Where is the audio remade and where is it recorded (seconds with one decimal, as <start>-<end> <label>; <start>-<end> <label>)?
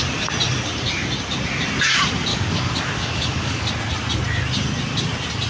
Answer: 0.0-2.3 recorded; 2.3-3.7 remade; 3.7-5.5 recorded